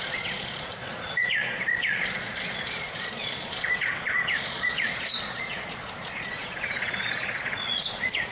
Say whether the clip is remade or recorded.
remade